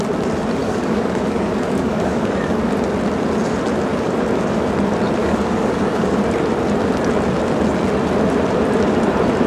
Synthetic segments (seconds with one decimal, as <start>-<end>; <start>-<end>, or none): 0.6-2.7; 3.9-4.7; 5.2-6.2